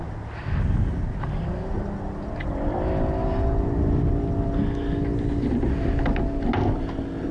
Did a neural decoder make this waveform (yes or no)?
no